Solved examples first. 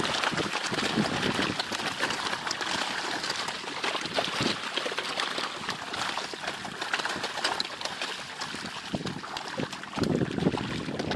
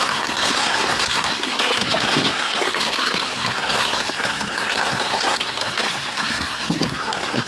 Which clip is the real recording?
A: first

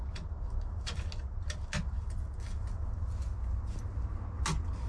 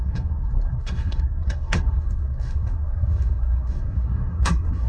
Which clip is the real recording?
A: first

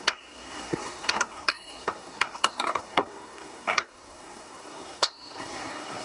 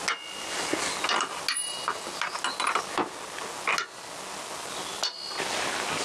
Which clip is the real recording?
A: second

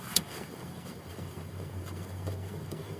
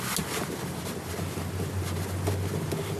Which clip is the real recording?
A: second